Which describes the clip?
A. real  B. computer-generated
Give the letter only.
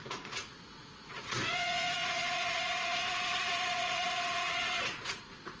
B